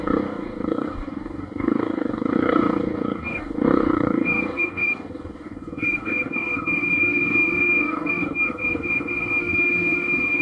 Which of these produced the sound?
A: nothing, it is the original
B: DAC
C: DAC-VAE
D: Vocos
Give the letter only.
B